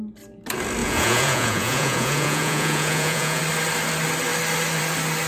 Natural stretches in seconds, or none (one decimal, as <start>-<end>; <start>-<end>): 0.0-0.8; 3.4-5.3